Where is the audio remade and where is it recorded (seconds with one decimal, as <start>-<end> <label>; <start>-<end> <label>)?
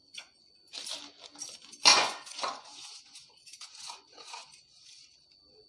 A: 0.0-0.5 remade; 0.5-1.9 recorded; 1.9-5.3 remade; 5.3-5.7 recorded